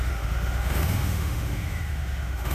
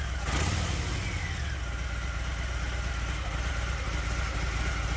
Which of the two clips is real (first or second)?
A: second